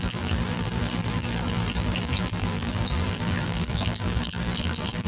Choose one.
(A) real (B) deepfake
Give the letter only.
B